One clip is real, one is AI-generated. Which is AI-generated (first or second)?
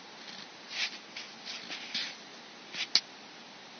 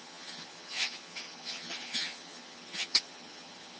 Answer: second